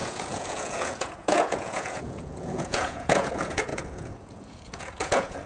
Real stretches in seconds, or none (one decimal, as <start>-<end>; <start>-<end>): none